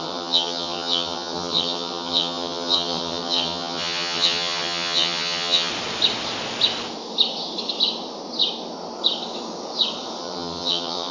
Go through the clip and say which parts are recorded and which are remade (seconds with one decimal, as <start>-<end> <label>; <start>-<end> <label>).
0.0-5.7 remade; 5.7-10.2 recorded; 10.2-11.1 remade